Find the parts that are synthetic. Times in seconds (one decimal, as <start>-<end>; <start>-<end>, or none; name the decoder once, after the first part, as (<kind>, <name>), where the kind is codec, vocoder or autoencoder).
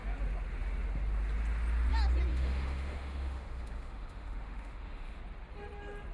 2.3-5.2 (autoencoder, DAC-VAE)